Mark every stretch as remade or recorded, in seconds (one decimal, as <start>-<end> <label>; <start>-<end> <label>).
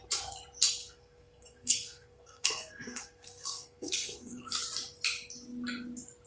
0.0-0.8 recorded; 0.8-4.6 remade; 4.6-6.3 recorded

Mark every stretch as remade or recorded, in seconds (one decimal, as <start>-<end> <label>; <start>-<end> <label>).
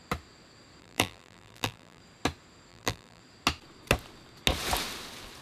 0.0-0.8 recorded; 0.8-2.0 remade; 2.0-2.7 recorded; 2.7-3.2 remade; 3.2-5.4 recorded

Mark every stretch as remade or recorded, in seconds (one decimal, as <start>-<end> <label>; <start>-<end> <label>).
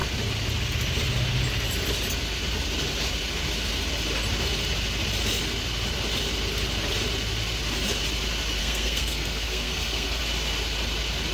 0.0-8.6 recorded; 8.6-10.2 remade; 10.2-11.3 recorded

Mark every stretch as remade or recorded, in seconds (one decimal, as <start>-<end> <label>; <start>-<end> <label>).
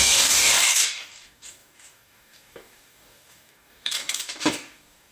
0.0-5.1 remade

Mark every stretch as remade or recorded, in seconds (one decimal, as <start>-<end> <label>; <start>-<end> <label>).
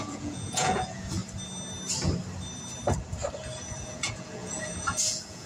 0.0-1.2 remade; 1.2-3.6 recorded; 3.6-5.5 remade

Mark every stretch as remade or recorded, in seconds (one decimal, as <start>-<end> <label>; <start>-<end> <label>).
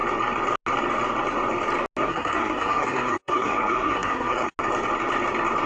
0.0-2.0 recorded; 2.0-4.5 remade; 4.5-5.7 recorded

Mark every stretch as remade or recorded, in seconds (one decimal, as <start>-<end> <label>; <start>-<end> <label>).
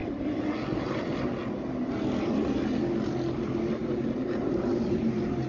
0.0-3.8 recorded; 3.8-5.5 remade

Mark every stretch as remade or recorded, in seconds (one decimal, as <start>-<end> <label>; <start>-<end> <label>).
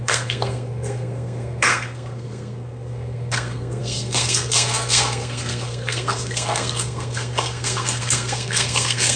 0.0-9.2 remade